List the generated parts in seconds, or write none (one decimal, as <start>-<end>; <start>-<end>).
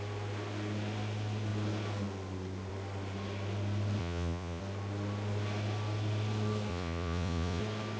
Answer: 4.0-4.6; 6.7-7.6